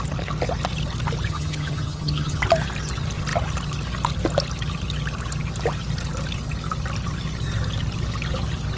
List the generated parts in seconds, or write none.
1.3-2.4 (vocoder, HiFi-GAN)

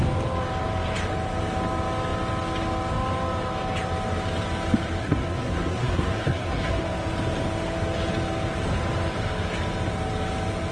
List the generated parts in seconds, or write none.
5.0-6.8 (codec, SNAC)

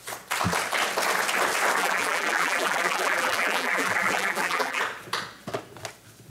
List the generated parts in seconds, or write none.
1.8-4.8 (vocoder, BigVGAN v2)

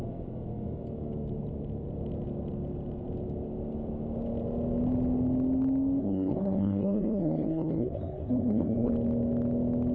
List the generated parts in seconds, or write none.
6.0-8.9 (codec, SNAC)

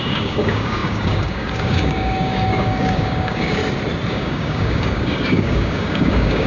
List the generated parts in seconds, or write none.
0.0-3.6 (codec, DAC); 4.1-6.5